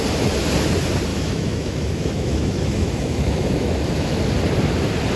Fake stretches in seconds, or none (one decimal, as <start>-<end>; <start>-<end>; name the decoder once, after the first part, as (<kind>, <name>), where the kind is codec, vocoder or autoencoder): 1.1-4.2 (autoencoder, DAC-VAE)